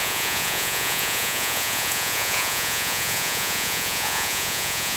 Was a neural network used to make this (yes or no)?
yes